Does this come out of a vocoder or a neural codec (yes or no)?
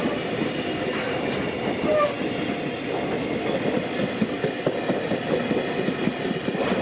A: no